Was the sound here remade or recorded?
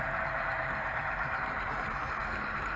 remade